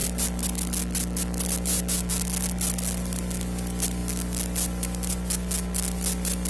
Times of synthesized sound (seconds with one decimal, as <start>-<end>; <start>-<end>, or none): none